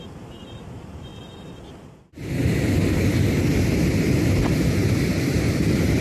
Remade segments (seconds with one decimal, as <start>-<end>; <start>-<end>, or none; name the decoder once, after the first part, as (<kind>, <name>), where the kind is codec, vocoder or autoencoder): 0.0-1.1 (vocoder, BigVGAN v2); 4.7-6.0